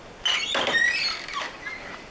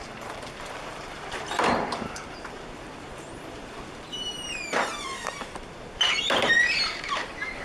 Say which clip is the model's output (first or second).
second